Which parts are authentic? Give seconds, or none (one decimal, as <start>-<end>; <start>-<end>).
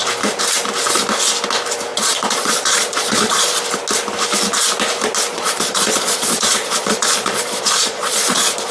0.0-1.9; 3.6-5.3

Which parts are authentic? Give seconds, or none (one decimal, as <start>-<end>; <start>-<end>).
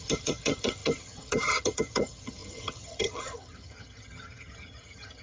none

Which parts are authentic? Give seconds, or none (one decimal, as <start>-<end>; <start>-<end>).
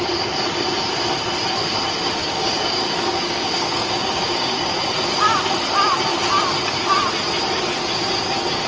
0.0-2.2; 4.8-8.7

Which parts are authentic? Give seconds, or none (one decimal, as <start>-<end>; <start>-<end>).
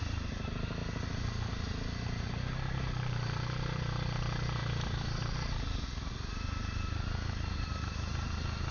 0.0-8.7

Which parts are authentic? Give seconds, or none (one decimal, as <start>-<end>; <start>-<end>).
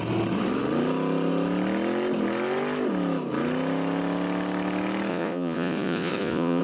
0.0-5.1